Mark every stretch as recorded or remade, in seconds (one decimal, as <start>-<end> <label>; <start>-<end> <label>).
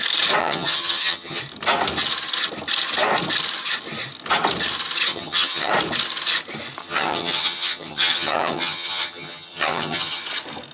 0.0-0.4 recorded; 0.4-1.4 remade; 1.4-5.1 recorded; 5.1-5.7 remade; 5.7-6.8 recorded; 6.8-10.2 remade; 10.2-10.7 recorded